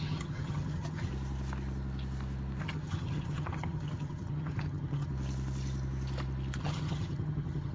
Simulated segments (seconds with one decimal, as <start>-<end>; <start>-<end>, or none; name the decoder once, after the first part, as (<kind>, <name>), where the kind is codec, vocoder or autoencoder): 0.0-1.1 (vocoder, HiFi-GAN); 2.6-5.1; 6.6-7.7